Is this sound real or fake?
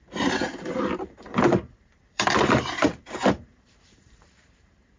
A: fake